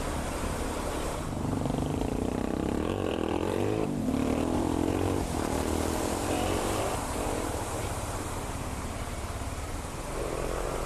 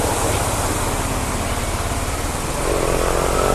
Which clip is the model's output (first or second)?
first